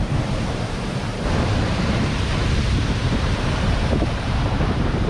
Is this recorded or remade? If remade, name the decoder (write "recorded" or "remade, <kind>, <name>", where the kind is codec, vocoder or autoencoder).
remade, vocoder, BigVGAN v2